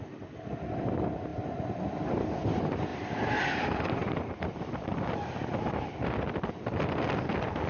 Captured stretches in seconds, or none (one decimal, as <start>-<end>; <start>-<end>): 0.0-2.9; 3.4-4.0; 5.1-7.7

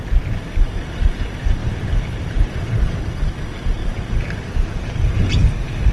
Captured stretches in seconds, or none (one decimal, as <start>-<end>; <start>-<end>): 0.0-1.6; 2.7-3.8; 5.4-5.9

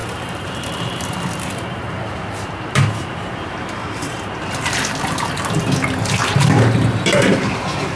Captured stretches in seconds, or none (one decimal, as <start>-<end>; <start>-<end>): 4.8-6.2; 7.6-8.0

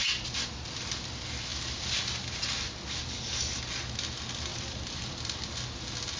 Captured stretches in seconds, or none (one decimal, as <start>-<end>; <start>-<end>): 0.0-4.5; 5.5-6.2

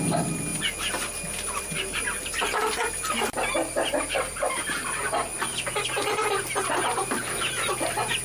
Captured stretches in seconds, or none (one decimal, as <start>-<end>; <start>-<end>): 0.5-1.6

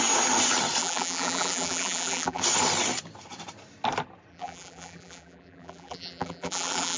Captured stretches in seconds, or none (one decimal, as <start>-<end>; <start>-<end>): 0.0-0.8; 2.4-4.3

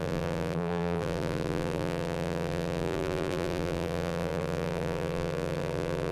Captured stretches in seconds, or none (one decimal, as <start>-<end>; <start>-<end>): none